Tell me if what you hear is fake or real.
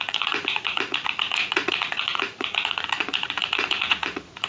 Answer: fake